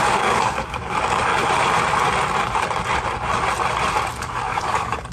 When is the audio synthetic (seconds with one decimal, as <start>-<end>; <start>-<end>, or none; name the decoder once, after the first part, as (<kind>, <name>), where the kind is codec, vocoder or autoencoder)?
0.0-1.3 (codec, DAC); 4.1-5.1